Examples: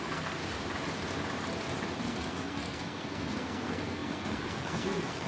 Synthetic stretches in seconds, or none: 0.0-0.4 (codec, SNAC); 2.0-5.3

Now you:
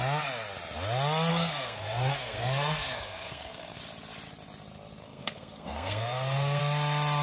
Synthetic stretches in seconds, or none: 1.3-3.8 (codec, SNAC); 5.0-6.6

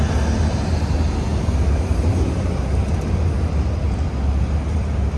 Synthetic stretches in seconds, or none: none